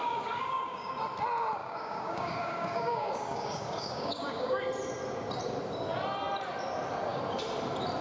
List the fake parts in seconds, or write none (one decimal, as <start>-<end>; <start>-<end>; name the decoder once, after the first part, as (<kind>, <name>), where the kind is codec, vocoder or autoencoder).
0.0-0.9 (codec, DAC); 1.6-4.6